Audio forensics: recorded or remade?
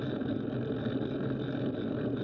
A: recorded